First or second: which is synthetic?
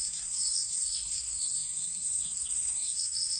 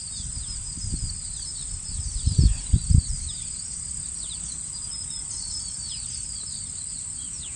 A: first